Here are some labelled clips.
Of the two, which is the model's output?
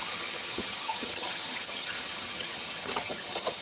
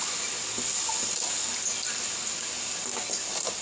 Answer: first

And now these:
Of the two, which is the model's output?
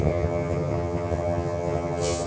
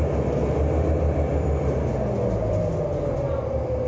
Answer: first